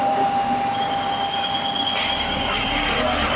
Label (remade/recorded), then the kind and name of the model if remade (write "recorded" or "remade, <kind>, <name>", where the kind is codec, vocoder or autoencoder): recorded